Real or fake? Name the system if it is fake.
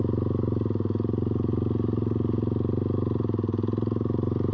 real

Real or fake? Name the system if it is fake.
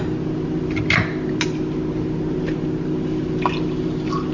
real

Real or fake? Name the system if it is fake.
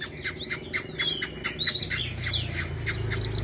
real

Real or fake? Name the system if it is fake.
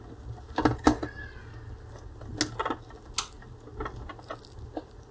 real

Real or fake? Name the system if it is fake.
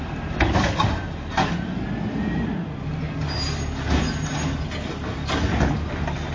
real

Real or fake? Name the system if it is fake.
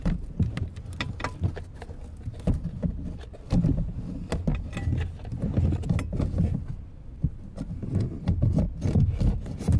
real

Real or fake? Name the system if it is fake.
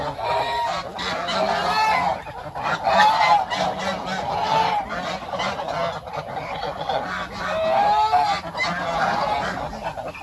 real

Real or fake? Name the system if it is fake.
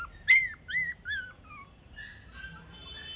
real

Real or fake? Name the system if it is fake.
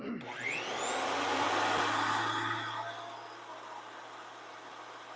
real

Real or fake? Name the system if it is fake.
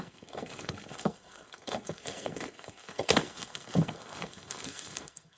fake, codec, SNAC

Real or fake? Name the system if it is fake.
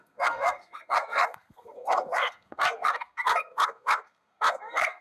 fake, codec, SNAC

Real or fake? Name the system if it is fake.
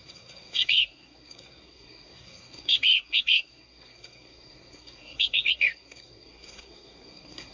fake, codec, SNAC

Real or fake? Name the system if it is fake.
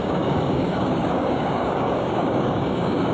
fake, codec, DAC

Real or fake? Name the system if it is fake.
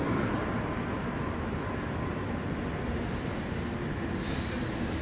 real